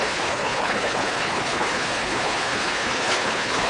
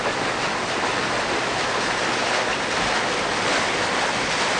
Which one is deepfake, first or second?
first